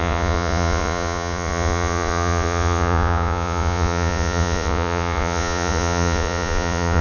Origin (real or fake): fake